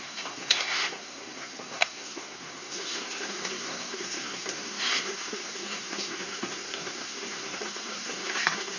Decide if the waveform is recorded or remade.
remade